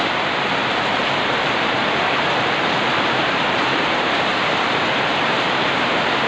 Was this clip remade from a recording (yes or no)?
yes